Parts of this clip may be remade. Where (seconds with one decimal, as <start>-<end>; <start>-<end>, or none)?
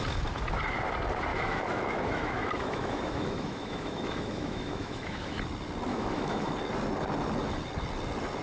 1.3-5.4; 5.9-6.5